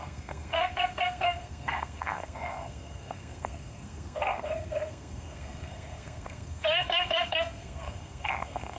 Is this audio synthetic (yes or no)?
yes